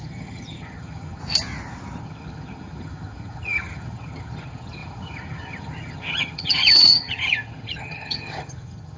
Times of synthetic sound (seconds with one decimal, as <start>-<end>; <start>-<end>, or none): 0.0-1.2; 2.0-9.0